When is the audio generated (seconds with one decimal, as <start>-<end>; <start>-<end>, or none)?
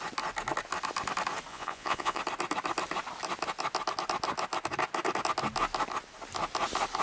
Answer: 1.5-2.2